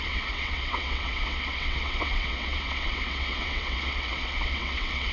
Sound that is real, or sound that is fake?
fake